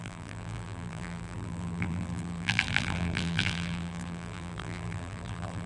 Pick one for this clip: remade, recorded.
remade